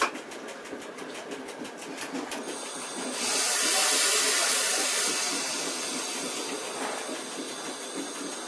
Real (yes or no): yes